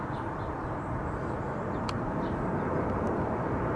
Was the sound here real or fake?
real